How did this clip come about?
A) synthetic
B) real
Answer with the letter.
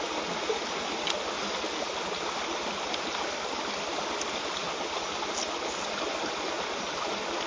B